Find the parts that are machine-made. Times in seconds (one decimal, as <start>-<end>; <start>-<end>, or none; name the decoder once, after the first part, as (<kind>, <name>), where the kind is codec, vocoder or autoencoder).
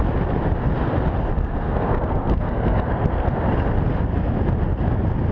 1.4-3.3 (codec, SNAC)